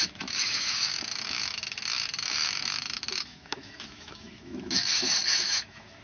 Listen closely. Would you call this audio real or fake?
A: fake